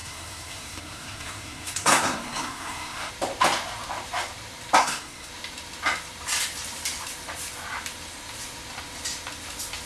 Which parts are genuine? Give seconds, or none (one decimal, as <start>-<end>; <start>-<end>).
3.1-4.8; 5.3-9.9